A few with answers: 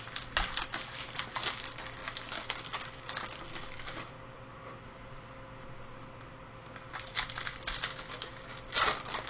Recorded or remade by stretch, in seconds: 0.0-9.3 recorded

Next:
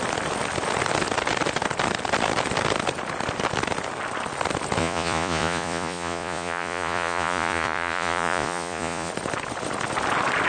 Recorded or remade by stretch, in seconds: 0.0-4.8 recorded; 4.8-9.1 remade; 9.1-10.5 recorded